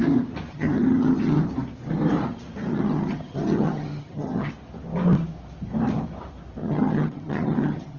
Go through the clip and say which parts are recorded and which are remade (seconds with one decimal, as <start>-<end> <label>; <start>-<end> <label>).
0.0-0.5 recorded; 0.5-1.4 remade; 1.4-2.7 recorded; 2.7-4.5 remade; 4.5-6.6 recorded; 6.6-8.0 remade